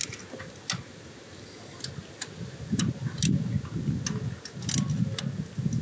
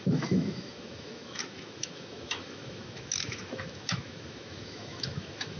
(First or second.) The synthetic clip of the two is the second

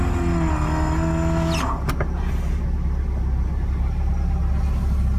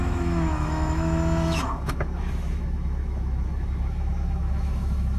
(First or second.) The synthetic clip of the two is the second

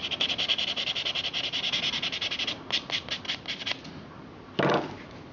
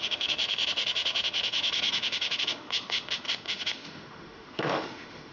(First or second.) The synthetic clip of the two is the second